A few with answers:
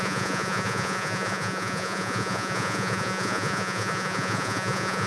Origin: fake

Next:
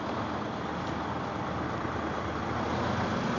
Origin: real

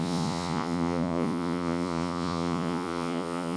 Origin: fake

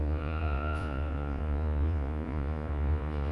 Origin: fake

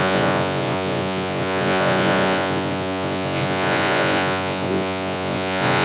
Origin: fake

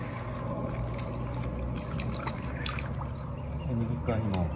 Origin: real